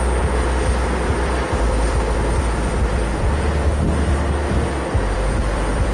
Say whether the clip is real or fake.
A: real